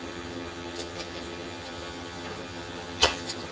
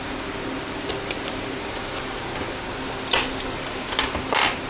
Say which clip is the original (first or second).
second